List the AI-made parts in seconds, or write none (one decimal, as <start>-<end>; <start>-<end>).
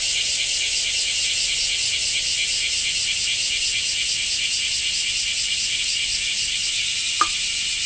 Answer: none